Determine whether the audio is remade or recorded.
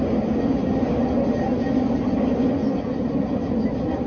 recorded